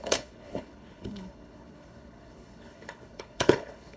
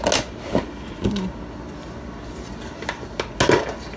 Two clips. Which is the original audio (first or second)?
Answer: second